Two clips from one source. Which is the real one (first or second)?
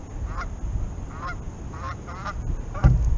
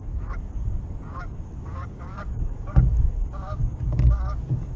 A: first